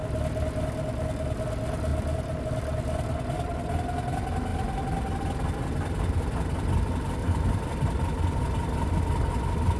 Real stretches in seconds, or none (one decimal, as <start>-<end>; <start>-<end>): 0.0-1.9; 2.4-4.5; 5.2-7.2; 8.9-9.8